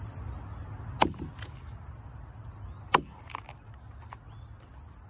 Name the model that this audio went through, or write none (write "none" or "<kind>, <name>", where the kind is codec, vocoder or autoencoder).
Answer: none